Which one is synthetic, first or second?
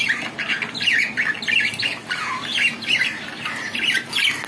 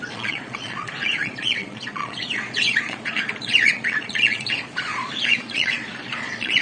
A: second